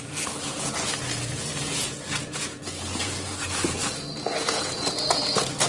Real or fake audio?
fake